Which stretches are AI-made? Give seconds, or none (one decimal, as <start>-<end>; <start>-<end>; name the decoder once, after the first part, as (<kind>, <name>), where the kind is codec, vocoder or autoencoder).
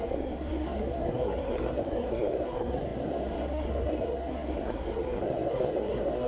0.0-6.3 (codec, SNAC)